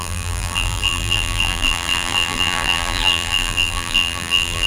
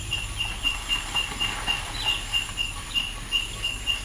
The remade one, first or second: first